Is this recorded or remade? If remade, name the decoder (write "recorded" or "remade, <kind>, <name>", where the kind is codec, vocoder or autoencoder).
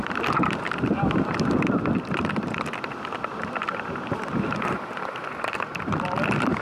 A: recorded